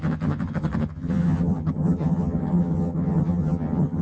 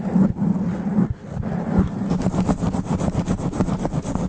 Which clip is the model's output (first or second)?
first